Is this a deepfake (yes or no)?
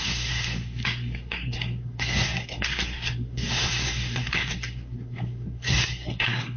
yes